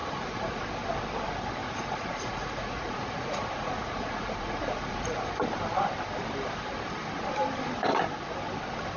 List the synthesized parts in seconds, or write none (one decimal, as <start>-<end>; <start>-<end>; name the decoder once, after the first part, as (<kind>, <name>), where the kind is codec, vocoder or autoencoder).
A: 0.0-0.6 (vocoder, Vocos); 1.6-5.3